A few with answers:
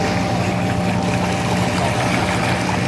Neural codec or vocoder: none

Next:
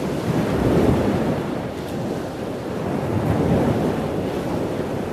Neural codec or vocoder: none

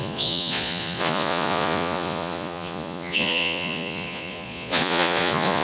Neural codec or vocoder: vocoder, Vocos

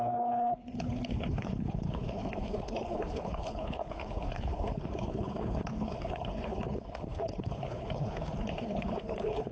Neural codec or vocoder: codec, HILCodec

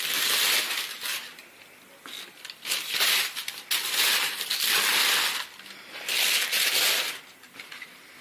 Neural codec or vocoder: none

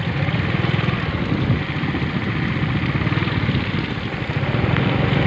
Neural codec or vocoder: none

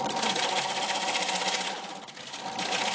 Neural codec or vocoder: none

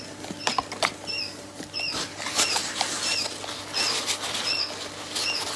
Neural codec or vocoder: none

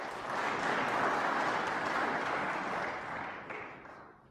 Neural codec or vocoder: none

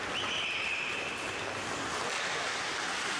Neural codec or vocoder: none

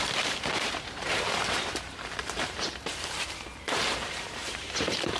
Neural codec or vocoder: vocoder, BigVGAN v2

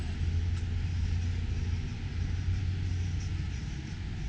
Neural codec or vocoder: none